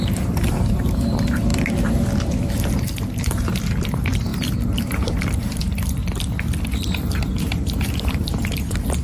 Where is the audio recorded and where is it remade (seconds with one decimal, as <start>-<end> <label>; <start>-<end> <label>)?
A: 0.0-1.5 remade; 1.5-2.2 recorded; 2.2-6.0 remade; 6.0-7.2 recorded; 7.2-9.0 remade